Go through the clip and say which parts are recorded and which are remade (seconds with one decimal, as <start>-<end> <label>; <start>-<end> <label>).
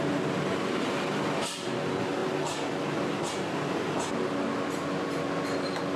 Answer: 0.0-6.0 recorded